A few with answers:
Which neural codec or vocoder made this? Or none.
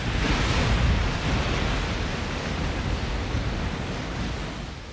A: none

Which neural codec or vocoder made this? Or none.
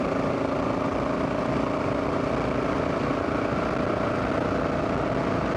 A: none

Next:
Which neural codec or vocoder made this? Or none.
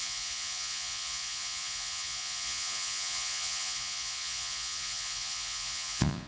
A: vocoder, Vocos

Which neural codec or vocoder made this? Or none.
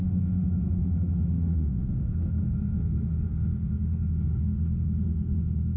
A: autoencoder, DAC-VAE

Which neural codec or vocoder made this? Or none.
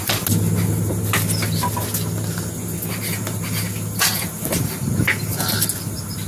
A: none